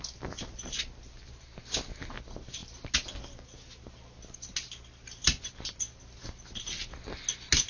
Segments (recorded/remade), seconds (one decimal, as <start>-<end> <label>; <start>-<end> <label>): 0.0-7.7 recorded